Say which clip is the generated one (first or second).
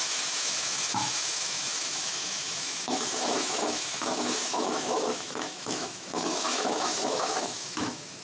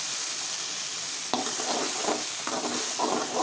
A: first